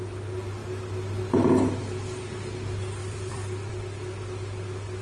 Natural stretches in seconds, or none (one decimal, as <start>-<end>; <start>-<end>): 0.0-3.0; 3.8-5.0